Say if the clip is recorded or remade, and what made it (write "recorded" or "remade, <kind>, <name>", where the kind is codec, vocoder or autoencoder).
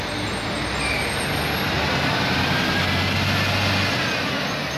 recorded